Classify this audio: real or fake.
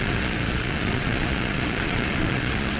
fake